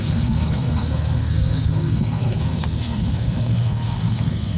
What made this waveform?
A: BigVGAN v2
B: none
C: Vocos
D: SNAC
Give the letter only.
D